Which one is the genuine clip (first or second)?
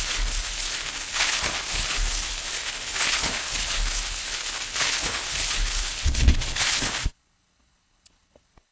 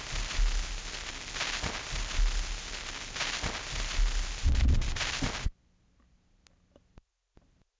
second